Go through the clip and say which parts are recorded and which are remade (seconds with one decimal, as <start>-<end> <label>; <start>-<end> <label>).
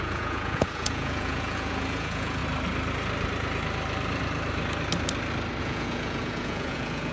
0.0-2.4 remade; 2.4-5.6 recorded; 5.6-7.1 remade